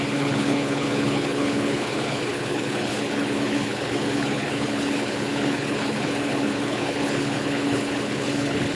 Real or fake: fake